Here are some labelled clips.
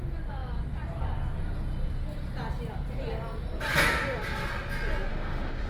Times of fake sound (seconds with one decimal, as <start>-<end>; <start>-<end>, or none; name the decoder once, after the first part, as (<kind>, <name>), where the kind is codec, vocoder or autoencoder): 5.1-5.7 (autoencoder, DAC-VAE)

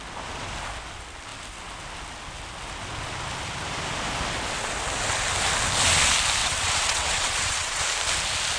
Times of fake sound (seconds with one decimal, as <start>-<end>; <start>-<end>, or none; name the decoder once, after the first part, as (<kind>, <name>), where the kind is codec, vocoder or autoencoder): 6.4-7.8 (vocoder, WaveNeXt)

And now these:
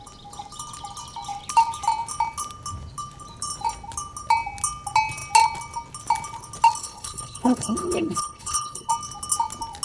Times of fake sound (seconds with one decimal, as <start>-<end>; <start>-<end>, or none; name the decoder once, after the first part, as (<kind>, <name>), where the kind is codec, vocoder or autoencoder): 6.8-8.9 (codec, HILCodec)